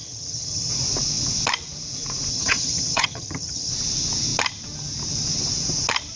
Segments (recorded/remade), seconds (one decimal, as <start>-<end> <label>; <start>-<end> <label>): 0.0-0.7 remade; 0.7-2.3 recorded; 2.3-3.7 remade; 3.7-6.2 recorded